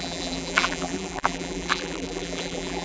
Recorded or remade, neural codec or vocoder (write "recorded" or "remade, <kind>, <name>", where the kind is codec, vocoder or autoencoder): remade, vocoder, BigVGAN v2